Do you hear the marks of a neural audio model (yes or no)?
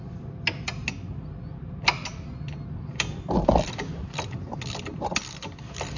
no